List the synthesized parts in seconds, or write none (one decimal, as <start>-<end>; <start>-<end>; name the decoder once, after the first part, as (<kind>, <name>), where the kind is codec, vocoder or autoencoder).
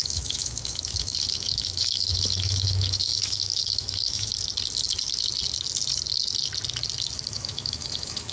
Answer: 0.0-4.3 (autoencoder, DAC-VAE); 7.3-8.3